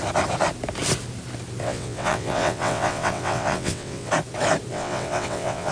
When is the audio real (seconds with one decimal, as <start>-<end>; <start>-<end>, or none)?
0.0-1.6; 4.1-4.7